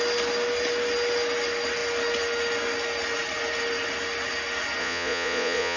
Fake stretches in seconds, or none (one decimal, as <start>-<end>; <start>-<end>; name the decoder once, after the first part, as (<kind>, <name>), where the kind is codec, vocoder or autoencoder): 4.8-5.8 (vocoder, Vocos)